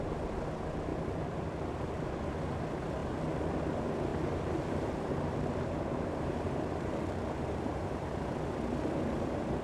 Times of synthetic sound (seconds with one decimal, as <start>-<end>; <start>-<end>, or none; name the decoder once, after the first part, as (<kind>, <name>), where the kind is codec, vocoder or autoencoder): 0.9-1.9 (vocoder, BigVGAN v2); 4.1-8.0